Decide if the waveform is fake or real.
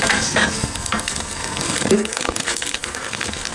fake